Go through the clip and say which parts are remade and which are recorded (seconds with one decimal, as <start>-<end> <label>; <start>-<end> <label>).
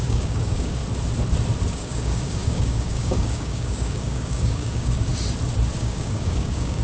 0.0-0.8 remade; 0.8-1.7 recorded; 1.7-5.1 remade; 5.1-5.8 recorded; 5.8-6.8 remade